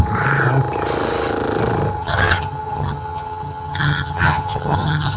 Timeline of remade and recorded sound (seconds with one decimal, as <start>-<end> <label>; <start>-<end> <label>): 0.0-2.0 recorded; 2.0-5.2 remade